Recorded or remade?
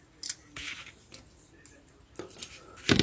recorded